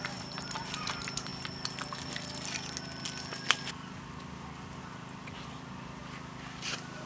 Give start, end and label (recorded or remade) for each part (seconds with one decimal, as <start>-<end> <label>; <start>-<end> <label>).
0.0-1.3 remade; 1.3-4.8 recorded; 4.8-6.0 remade; 6.0-6.6 recorded; 6.6-7.1 remade